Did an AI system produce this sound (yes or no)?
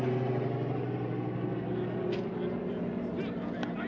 no